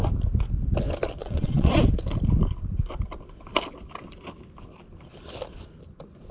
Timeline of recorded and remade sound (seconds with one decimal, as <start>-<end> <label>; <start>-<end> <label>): 0.0-1.2 recorded; 1.2-1.7 remade; 1.7-6.3 recorded